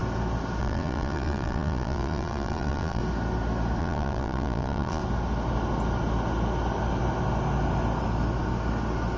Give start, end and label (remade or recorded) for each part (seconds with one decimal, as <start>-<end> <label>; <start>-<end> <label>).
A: 0.0-0.6 recorded; 0.6-3.0 remade; 3.0-3.8 recorded; 3.8-5.0 remade; 5.0-9.2 recorded